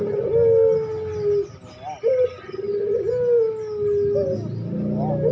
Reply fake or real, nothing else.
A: real